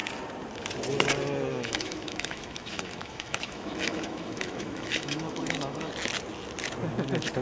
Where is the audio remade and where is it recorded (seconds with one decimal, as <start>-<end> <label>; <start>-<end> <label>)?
0.0-1.5 recorded; 1.5-5.9 remade; 5.9-7.4 recorded